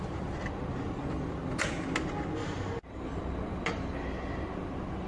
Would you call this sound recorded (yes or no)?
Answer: yes